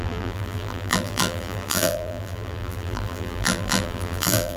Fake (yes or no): yes